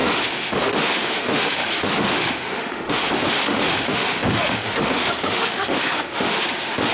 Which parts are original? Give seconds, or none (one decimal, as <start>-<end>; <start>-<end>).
none